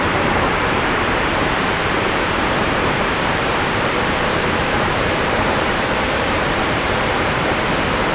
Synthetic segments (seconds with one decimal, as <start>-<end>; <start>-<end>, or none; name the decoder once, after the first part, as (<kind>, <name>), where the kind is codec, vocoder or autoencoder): 0.0-8.1 (vocoder, BigVGAN v2)